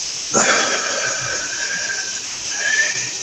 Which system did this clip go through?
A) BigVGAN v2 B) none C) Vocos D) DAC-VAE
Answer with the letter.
A